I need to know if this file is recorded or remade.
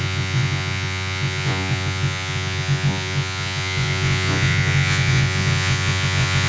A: remade